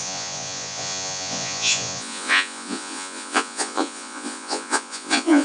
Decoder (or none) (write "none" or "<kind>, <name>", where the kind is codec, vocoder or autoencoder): vocoder, Vocos